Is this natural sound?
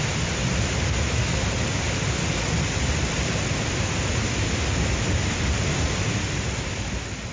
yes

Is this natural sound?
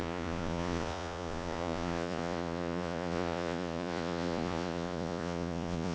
no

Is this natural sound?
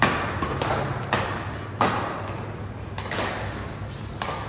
yes